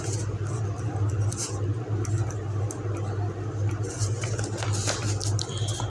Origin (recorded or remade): recorded